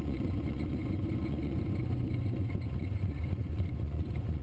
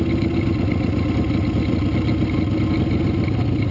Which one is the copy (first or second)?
first